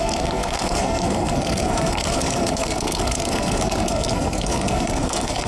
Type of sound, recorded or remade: remade